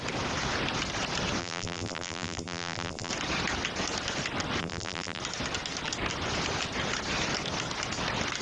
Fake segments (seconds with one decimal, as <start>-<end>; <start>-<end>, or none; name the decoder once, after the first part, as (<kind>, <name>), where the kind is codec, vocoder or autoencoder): 1.4-3.1 (vocoder, BigVGAN v2); 4.6-5.2